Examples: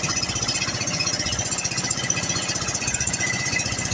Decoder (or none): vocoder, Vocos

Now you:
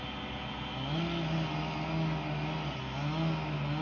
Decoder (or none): none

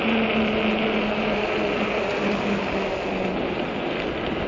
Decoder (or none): none